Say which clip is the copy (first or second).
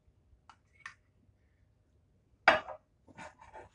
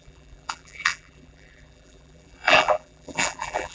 second